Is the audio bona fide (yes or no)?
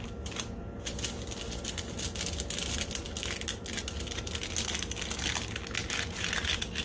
yes